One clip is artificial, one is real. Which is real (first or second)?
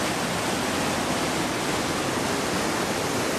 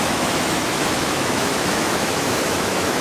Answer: first